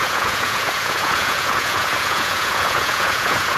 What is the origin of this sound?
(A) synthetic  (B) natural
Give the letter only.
A